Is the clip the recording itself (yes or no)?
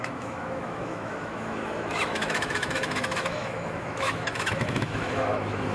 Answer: no